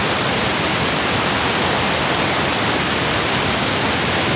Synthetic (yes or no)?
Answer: no